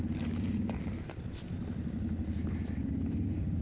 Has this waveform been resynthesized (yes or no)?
no